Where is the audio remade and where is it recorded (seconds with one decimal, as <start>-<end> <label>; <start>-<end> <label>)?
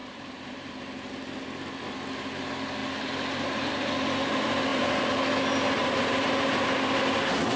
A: 0.0-0.7 remade; 0.7-2.8 recorded; 2.8-3.7 remade; 3.7-4.7 recorded; 4.7-5.2 remade; 5.2-5.8 recorded; 5.8-6.5 remade; 6.5-7.6 recorded